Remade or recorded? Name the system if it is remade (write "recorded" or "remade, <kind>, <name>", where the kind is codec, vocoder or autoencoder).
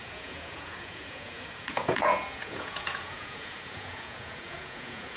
remade, vocoder, Vocos